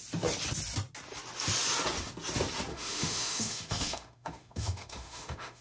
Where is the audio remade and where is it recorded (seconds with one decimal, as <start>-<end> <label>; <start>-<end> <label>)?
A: 0.0-2.7 recorded; 2.7-5.6 remade